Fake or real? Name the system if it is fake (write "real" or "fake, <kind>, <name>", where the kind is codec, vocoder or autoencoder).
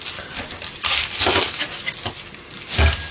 real